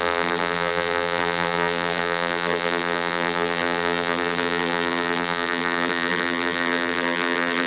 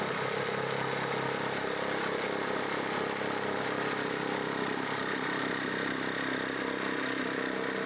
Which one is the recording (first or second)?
second